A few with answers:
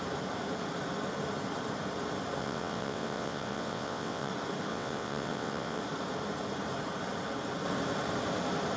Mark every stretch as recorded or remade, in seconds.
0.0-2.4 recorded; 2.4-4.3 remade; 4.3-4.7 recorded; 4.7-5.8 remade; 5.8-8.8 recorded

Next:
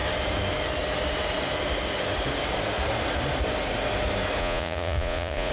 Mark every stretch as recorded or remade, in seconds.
0.0-4.4 recorded; 4.4-5.5 remade

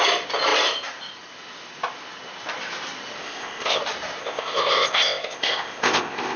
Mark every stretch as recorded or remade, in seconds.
0.0-3.2 recorded; 3.2-3.8 remade; 3.8-4.2 recorded; 4.2-6.4 remade

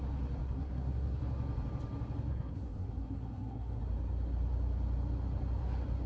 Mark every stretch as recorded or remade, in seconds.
0.0-0.4 recorded; 0.4-1.2 remade; 1.2-2.3 recorded; 2.3-3.8 remade; 3.8-6.1 recorded

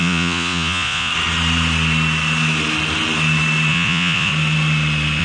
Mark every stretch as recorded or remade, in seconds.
0.0-1.1 remade; 1.1-3.7 recorded; 3.7-4.3 remade; 4.3-5.2 recorded

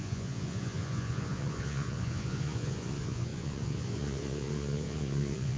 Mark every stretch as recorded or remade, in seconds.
0.0-5.6 remade